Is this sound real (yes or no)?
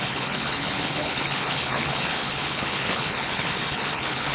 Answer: no